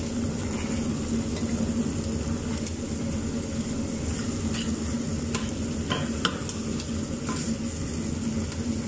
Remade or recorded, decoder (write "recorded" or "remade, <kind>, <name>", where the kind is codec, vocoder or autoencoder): recorded